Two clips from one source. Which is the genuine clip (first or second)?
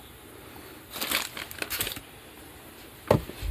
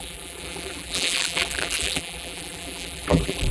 first